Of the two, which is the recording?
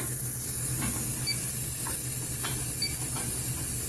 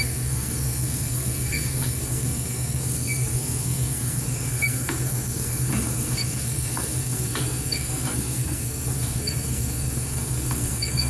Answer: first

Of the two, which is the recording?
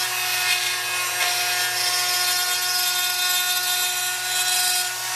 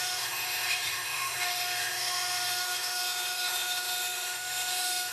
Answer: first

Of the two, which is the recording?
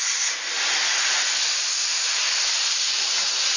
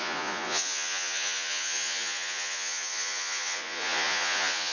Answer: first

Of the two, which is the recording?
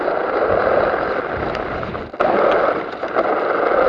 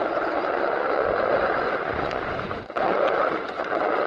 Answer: first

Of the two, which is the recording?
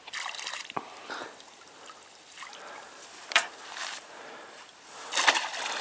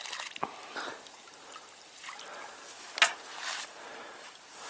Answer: second